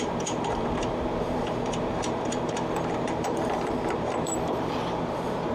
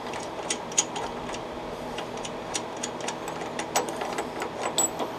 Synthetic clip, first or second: first